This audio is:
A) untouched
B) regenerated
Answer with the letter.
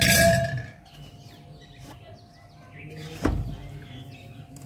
A